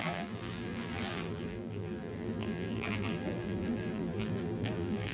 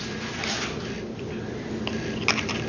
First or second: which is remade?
first